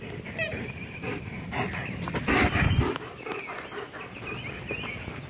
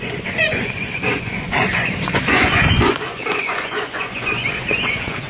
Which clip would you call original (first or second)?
first